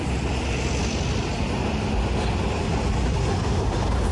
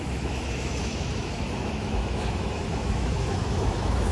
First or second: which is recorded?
first